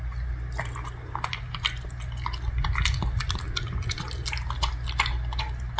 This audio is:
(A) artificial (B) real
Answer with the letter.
B